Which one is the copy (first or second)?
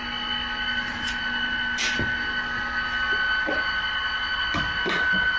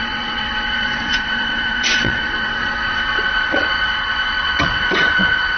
second